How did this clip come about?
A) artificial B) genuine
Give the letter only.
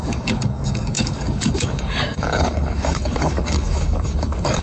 A